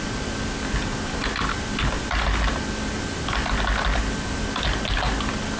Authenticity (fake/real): real